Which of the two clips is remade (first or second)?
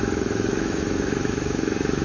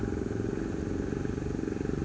first